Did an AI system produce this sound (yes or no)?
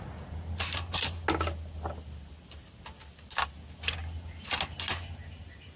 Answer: no